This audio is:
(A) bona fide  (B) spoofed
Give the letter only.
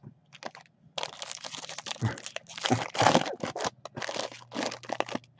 A